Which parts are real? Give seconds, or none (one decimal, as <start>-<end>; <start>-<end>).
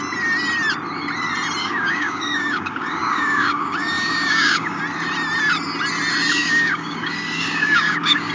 0.0-1.6; 4.8-6.3